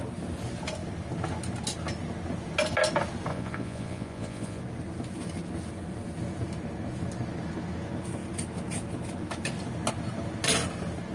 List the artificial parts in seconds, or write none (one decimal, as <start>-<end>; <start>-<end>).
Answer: 3.3-4.6